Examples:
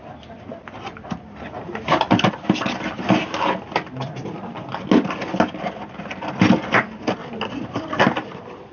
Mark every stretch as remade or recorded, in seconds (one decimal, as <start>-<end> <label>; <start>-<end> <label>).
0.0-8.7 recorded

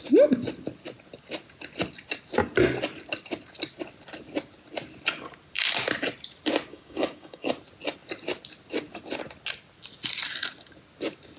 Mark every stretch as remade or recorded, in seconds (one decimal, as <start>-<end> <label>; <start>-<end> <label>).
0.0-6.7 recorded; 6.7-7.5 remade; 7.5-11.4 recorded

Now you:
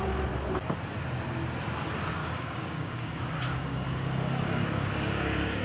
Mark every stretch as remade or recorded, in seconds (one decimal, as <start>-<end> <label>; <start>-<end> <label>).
0.0-2.2 recorded; 2.2-5.6 remade